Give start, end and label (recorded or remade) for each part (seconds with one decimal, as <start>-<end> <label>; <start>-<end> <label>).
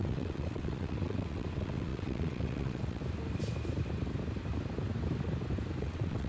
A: 0.0-3.0 remade; 3.0-5.8 recorded; 5.8-6.3 remade